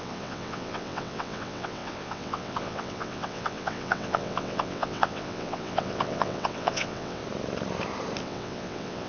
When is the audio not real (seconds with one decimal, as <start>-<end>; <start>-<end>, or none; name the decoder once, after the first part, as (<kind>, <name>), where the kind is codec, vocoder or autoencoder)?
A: 0.0-7.2 (vocoder, WaveNeXt); 8.2-9.1